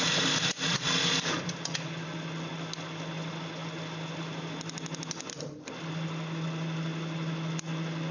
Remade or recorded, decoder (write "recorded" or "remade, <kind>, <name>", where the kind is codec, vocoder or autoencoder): recorded